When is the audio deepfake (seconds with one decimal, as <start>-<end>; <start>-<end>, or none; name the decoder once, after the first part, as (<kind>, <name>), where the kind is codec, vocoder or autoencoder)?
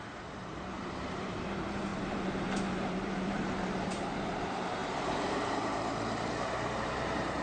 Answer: 0.0-7.4 (vocoder, BigVGAN v2)